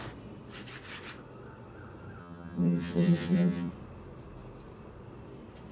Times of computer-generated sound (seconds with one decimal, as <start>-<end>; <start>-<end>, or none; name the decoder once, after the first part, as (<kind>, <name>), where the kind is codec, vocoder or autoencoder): 2.2-3.7 (vocoder, HiFi-GAN)